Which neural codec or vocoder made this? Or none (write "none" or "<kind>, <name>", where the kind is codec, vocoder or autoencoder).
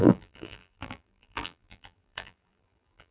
vocoder, BigVGAN v2